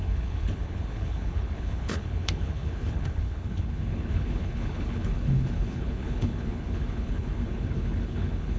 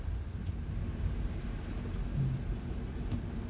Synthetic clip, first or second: first